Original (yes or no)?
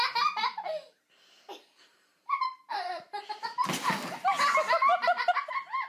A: yes